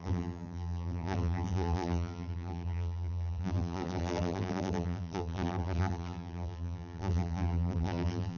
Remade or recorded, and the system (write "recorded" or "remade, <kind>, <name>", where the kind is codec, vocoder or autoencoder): remade, vocoder, BigVGAN v2